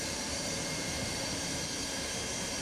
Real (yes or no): no